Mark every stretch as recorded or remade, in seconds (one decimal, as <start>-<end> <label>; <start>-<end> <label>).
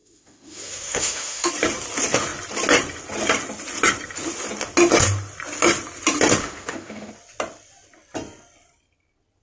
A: 0.0-1.5 remade; 1.5-6.4 recorded; 6.4-7.1 remade; 7.1-9.4 recorded